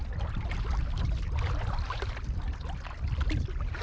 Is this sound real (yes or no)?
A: yes